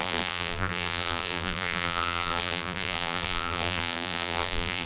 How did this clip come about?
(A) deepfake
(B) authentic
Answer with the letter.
A